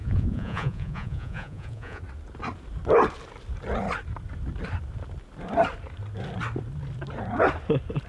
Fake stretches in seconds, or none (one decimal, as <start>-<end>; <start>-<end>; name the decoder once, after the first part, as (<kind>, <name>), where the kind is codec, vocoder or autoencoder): 0.0-2.0 (vocoder, Vocos)